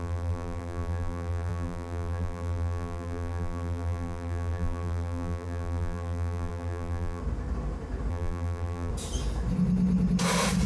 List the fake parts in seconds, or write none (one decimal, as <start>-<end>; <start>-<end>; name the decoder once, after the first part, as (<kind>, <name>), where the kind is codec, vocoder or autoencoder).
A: 0.0-7.2 (vocoder, BigVGAN v2); 8.1-8.9